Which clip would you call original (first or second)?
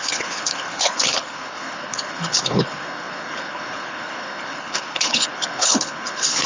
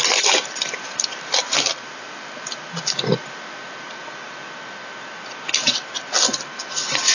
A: second